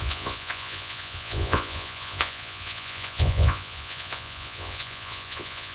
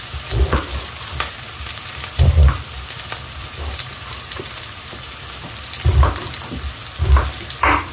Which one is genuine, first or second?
second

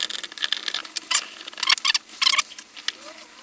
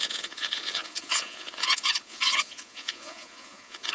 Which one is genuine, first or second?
first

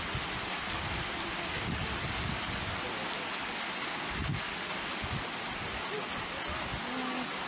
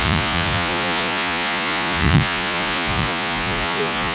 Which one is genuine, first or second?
first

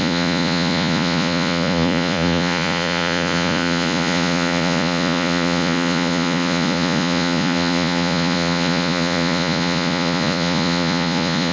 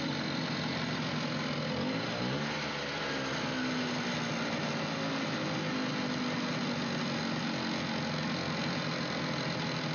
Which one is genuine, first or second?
second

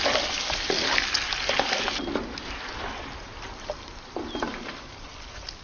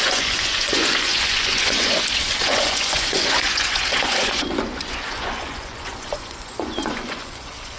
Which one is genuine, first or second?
first